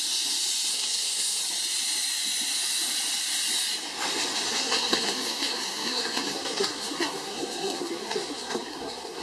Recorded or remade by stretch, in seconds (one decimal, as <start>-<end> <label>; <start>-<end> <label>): 0.0-0.7 recorded; 0.7-1.4 remade; 1.4-4.5 recorded; 4.5-9.2 remade